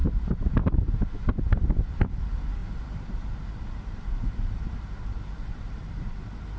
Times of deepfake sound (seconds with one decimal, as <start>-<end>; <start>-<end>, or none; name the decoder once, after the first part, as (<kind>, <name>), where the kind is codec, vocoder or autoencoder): 0.0-6.6 (vocoder, BigVGAN v2)